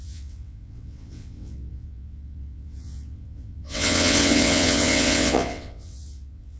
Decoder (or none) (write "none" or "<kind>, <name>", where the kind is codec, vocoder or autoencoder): vocoder, WaveNeXt